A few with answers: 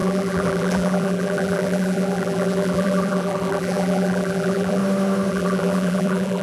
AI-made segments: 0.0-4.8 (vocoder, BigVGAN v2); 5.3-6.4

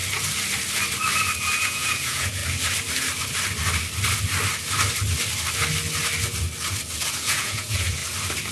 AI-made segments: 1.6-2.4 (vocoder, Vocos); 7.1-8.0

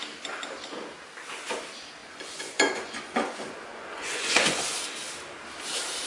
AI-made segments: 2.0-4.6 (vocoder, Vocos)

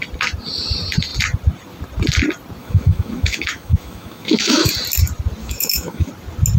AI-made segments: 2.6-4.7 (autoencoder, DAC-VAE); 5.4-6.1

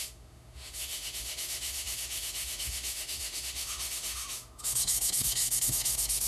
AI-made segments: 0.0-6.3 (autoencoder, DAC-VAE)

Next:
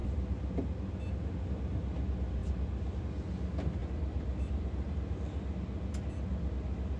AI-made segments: 3.8-4.9 (vocoder, BigVGAN v2)